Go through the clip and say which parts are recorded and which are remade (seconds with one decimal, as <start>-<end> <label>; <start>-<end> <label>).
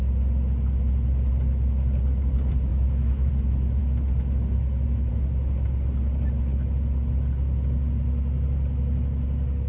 0.0-2.7 recorded; 2.7-3.3 remade; 3.3-9.7 recorded